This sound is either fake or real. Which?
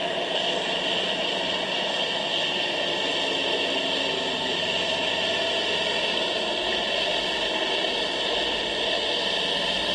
real